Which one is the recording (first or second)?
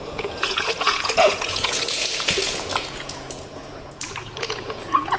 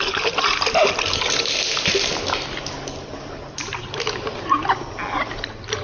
second